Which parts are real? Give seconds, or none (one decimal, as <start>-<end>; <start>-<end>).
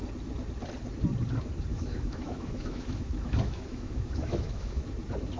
0.0-1.7; 4.9-5.4